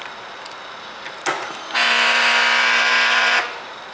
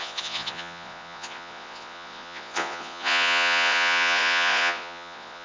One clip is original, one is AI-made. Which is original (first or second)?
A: first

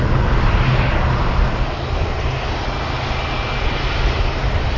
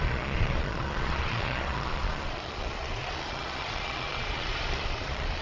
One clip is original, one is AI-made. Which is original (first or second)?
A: first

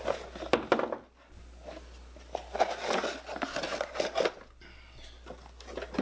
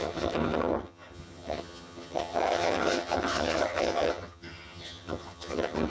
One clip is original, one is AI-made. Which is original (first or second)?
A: first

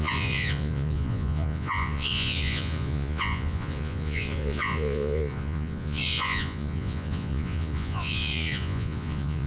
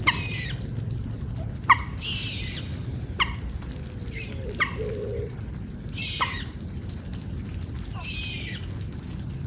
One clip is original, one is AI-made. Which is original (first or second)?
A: second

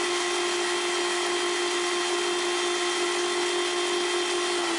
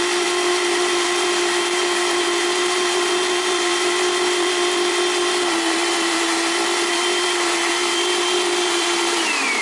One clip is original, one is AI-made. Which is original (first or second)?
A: first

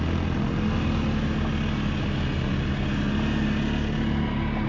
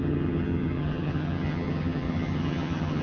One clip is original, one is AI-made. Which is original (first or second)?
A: first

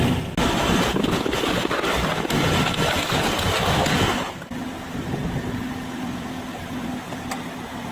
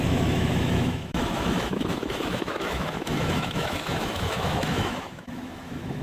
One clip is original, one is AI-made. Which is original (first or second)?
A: first